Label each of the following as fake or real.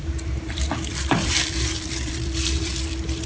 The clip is fake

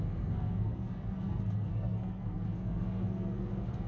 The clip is fake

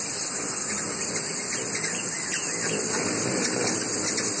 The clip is real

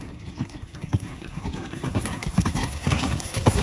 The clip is fake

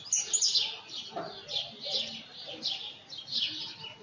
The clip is real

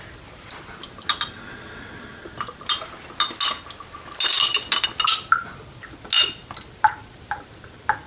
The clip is real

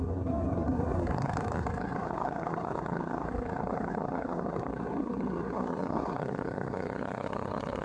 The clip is fake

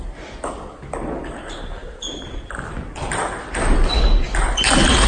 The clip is real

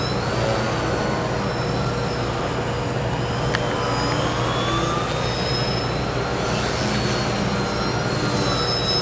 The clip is real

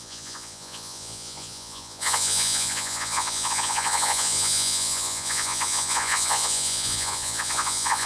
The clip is fake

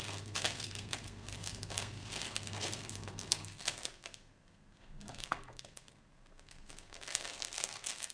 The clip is fake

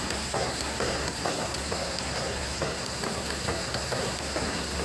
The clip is fake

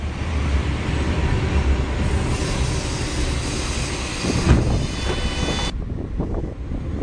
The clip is real